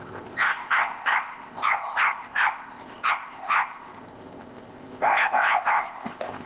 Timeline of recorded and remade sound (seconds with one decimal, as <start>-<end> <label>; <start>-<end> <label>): 0.0-6.5 remade

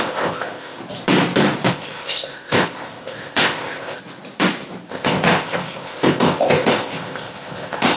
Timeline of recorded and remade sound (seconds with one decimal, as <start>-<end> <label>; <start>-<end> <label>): 0.0-0.8 remade; 0.8-1.7 recorded; 1.7-4.0 remade; 4.0-4.9 recorded; 4.9-8.0 remade

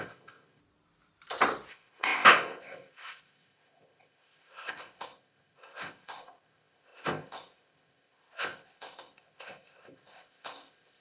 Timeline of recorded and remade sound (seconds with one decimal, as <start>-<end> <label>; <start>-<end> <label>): 0.0-0.6 remade; 0.6-1.7 recorded; 1.7-11.0 remade

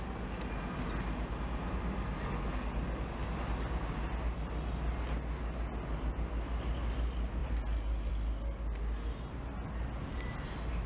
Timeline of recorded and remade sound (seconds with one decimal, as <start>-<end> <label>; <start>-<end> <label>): 0.0-10.9 recorded

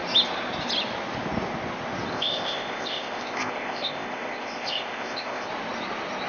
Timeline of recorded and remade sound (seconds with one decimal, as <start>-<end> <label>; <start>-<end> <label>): 0.0-2.1 recorded; 2.1-5.5 remade; 5.5-6.3 recorded

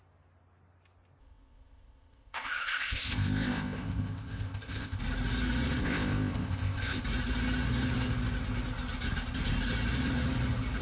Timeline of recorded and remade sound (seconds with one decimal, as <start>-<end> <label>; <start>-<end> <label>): 0.0-1.2 recorded; 1.2-5.0 remade; 5.0-5.8 recorded; 5.8-7.0 remade; 7.0-10.8 recorded

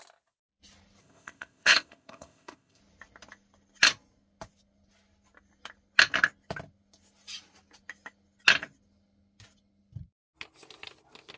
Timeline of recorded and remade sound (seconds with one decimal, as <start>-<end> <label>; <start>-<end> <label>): 0.0-1.0 recorded; 1.0-2.8 remade; 2.8-11.4 recorded